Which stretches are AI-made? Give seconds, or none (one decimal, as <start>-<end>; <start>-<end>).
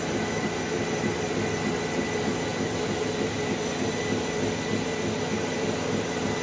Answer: none